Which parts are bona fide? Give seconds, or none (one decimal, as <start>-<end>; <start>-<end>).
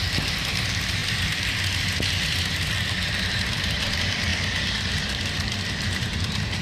1.0-3.3